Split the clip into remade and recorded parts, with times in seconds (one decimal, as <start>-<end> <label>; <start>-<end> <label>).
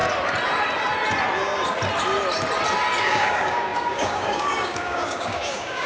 0.0-3.0 recorded; 3.0-5.9 remade